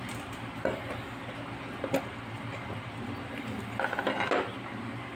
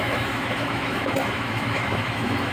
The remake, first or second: second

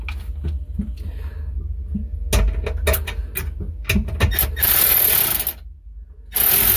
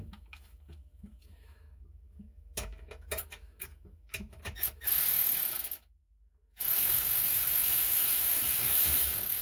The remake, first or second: second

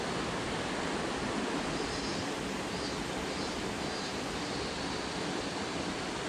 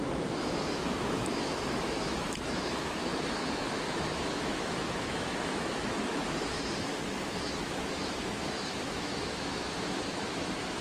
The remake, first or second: second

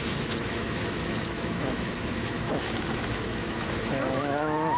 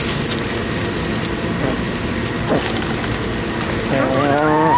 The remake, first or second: first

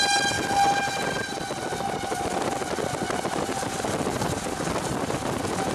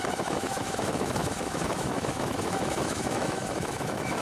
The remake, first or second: second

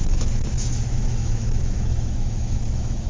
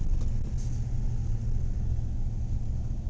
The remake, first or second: first